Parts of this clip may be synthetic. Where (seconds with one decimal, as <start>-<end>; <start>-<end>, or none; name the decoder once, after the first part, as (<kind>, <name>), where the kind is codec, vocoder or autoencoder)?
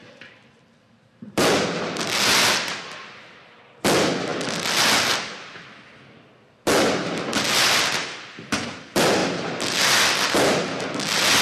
0.0-2.0 (vocoder, BigVGAN v2)